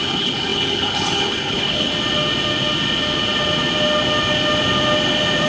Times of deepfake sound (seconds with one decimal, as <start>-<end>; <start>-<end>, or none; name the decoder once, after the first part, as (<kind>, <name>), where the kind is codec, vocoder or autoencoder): 0.0-1.9 (codec, HILCodec)